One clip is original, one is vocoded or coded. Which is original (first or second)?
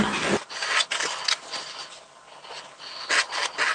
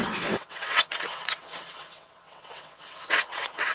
first